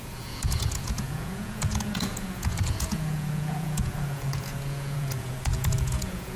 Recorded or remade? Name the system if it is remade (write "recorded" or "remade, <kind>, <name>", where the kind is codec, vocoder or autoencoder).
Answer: remade, vocoder, Vocos